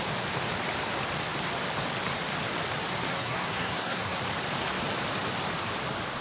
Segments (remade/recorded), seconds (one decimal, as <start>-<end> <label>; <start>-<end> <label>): 0.0-3.1 recorded; 3.1-4.2 remade; 4.2-6.2 recorded